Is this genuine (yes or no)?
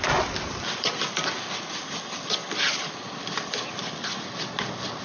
yes